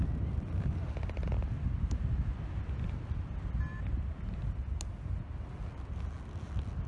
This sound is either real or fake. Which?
real